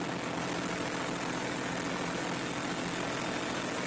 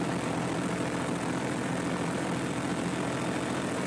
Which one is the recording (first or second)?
first